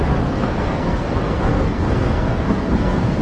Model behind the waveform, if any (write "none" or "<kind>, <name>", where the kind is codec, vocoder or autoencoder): codec, SNAC